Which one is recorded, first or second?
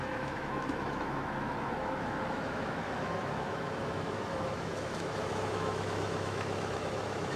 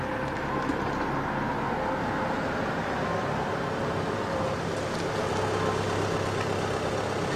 second